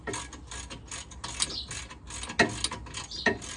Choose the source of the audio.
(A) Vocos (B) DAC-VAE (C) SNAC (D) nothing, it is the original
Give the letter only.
D